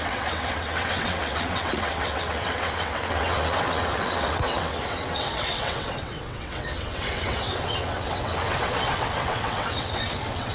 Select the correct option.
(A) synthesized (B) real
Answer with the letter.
A